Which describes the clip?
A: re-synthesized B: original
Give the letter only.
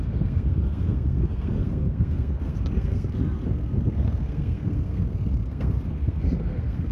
A